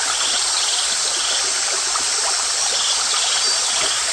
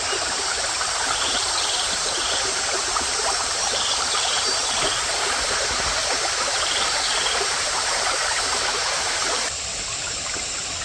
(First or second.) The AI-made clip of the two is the second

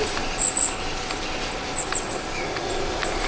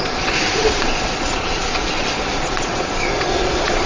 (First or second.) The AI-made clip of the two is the second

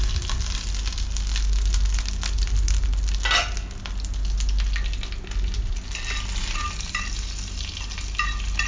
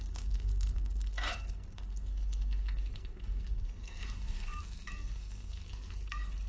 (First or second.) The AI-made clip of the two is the second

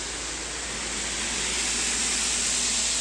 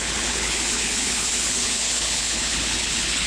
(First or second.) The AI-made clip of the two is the second